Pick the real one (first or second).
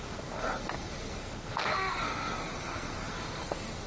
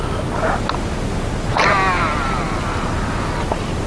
second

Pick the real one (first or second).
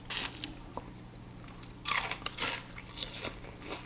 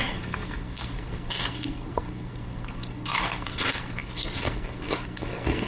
first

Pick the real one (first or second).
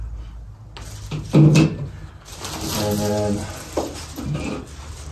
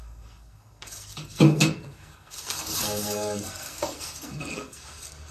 first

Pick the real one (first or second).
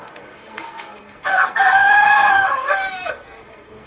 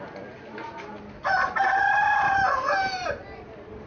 second